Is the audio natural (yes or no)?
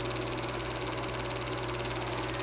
yes